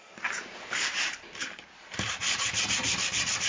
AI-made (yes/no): yes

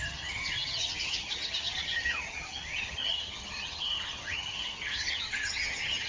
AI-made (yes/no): yes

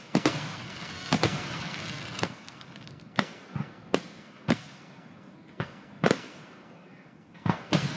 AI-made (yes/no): yes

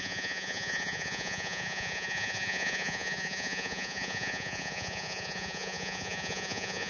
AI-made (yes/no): yes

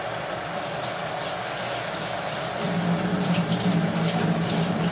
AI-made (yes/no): no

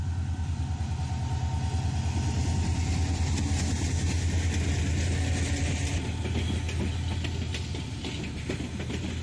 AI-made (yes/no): no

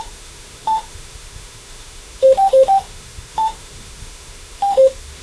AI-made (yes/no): yes